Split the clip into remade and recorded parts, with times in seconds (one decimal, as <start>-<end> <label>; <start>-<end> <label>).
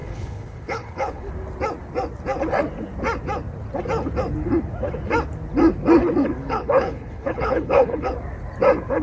0.0-1.3 remade; 1.3-6.4 recorded; 6.4-8.1 remade; 8.1-9.0 recorded